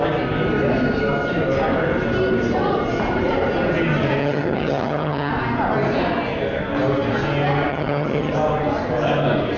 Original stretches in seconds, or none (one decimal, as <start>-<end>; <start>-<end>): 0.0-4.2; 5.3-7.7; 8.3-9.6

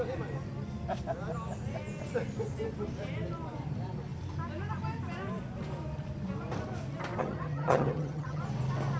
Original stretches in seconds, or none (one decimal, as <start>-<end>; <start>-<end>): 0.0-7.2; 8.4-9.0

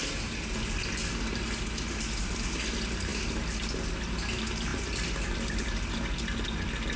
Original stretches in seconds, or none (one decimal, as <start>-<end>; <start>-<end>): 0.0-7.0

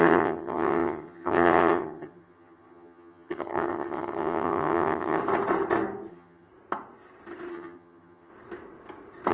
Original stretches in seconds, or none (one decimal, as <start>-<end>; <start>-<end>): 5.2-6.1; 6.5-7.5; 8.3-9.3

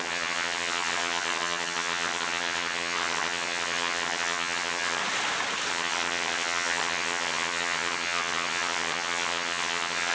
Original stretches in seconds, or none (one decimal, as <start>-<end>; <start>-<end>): 5.0-5.7

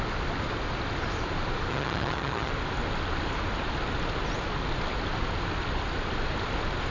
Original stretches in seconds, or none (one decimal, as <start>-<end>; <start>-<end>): 0.0-1.7; 2.5-6.9

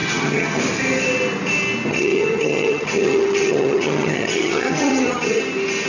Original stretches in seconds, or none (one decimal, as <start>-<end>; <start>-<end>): 0.6-1.9; 5.4-5.9